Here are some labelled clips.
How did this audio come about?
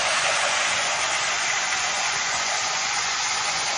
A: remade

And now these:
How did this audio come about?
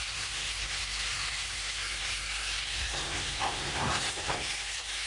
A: remade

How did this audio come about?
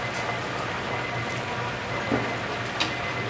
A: recorded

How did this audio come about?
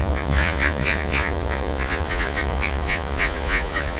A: remade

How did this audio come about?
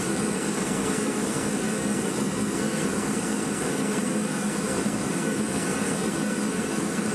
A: remade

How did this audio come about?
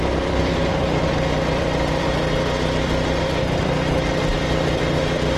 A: remade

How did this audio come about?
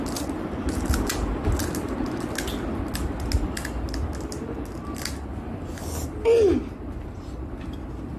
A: recorded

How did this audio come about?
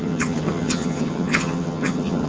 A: remade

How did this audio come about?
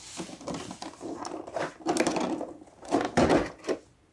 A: recorded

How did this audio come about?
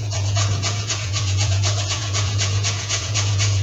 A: remade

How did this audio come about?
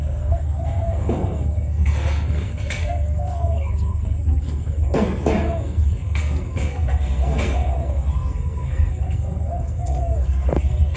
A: remade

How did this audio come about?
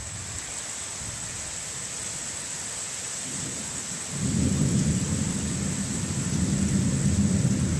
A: recorded